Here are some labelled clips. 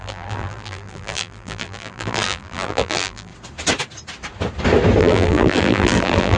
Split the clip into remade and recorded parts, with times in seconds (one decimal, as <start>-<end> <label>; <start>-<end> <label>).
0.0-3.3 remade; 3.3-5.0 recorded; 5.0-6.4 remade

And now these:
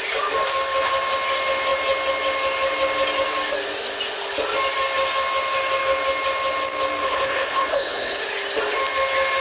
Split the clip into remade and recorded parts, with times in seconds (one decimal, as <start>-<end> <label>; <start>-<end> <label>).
0.0-7.0 recorded; 7.0-8.2 remade; 8.2-9.4 recorded

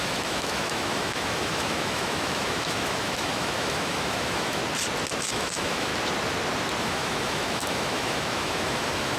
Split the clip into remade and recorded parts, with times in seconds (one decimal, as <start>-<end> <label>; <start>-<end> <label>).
0.0-4.6 remade; 4.6-5.2 recorded; 5.2-5.9 remade; 5.9-6.8 recorded; 6.8-9.2 remade

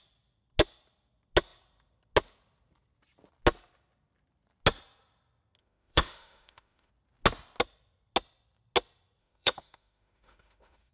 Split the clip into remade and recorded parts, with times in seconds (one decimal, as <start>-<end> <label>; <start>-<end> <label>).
0.0-5.6 recorded; 5.6-6.9 remade; 6.9-9.2 recorded; 9.2-10.9 remade

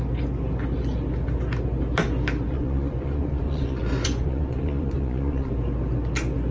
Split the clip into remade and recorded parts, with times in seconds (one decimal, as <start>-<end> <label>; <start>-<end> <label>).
0.0-2.5 recorded; 2.5-5.5 remade; 5.5-6.5 recorded

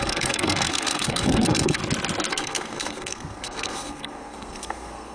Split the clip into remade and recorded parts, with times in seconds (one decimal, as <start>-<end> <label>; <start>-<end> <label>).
0.0-1.8 remade; 1.8-2.3 recorded; 2.3-5.1 remade

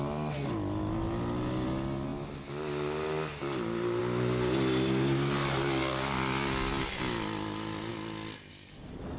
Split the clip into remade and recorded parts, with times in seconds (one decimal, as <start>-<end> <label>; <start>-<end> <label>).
0.0-9.2 recorded